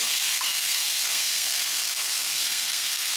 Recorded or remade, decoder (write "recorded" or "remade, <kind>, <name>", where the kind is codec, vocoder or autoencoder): remade, codec, SNAC